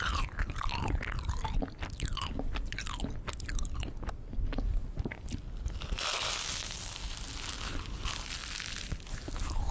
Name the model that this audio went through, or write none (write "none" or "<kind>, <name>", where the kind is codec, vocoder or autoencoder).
none